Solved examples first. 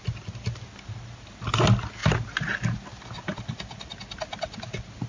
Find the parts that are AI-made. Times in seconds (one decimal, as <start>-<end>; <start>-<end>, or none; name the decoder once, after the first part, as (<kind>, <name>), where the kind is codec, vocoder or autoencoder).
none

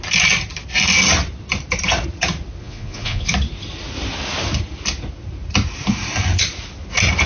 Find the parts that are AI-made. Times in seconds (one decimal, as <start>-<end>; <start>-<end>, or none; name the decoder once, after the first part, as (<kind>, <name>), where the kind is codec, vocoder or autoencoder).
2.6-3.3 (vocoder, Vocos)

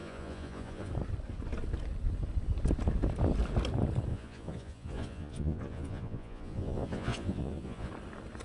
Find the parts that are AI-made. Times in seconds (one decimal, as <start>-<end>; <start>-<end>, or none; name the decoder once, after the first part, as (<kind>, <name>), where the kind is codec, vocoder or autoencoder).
0.0-0.9 (vocoder, Vocos); 4.1-7.9

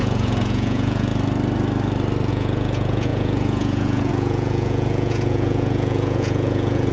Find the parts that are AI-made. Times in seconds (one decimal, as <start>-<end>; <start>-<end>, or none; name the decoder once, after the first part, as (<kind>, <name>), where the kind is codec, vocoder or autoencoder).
0.0-1.1 (vocoder, Vocos); 2.3-6.9